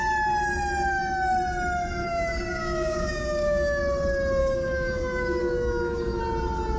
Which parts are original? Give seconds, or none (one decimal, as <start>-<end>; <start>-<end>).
0.0-2.0; 3.8-4.4; 6.2-6.8